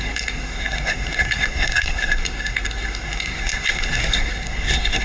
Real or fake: fake